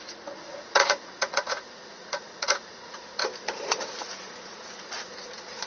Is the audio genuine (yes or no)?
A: no